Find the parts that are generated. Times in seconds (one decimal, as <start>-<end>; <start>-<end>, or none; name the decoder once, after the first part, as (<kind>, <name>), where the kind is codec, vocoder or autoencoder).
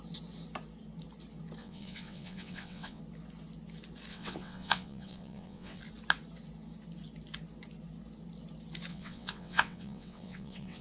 1.6-3.0 (vocoder, WaveNeXt); 4.1-5.8; 8.9-10.8